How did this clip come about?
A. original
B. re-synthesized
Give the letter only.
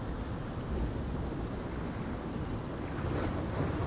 A